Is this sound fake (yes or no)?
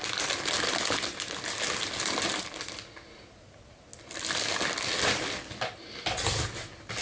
no